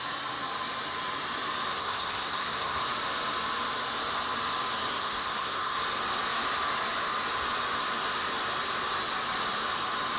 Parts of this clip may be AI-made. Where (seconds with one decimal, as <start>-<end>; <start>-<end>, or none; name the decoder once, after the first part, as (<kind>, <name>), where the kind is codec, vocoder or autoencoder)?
1.7-2.8 (codec, SNAC); 4.9-5.8